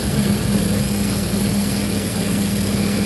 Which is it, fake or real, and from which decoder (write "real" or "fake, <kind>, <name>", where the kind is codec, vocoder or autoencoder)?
fake, codec, SNAC